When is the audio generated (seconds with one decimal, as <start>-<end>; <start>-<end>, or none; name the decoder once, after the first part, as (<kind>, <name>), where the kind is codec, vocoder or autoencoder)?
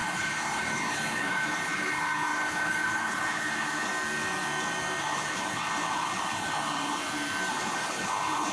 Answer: 0.0-3.9 (codec, HILCodec); 5.0-7.0; 7.5-8.5